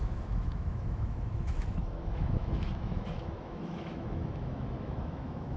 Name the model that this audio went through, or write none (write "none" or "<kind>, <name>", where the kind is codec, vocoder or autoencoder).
autoencoder, DAC-VAE